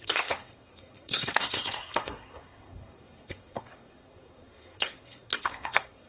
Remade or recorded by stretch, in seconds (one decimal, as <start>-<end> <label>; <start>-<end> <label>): 0.0-6.1 remade